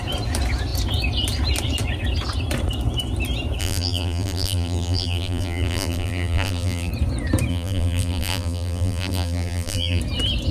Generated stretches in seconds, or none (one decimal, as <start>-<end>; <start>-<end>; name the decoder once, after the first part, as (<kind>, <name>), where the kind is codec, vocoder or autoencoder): 3.6-6.9 (vocoder, BigVGAN v2); 7.5-10.0